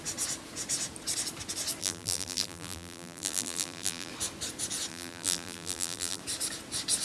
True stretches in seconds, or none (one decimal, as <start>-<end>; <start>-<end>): 0.0-1.8; 4.1-4.9; 6.2-7.0